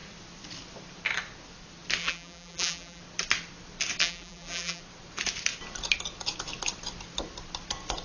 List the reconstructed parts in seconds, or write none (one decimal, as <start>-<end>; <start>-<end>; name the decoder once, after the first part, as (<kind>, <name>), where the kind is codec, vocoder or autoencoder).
2.0-3.0 (vocoder, BigVGAN v2); 4.0-4.8